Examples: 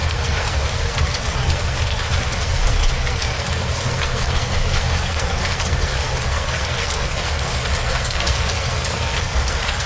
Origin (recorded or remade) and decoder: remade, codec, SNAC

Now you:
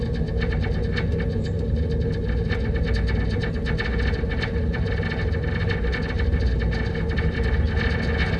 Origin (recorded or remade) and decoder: recorded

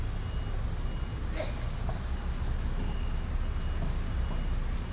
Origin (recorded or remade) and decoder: recorded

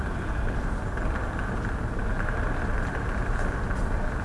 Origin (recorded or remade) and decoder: recorded